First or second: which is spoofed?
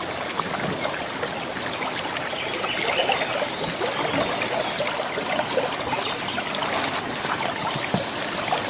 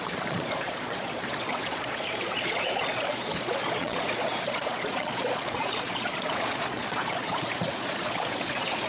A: second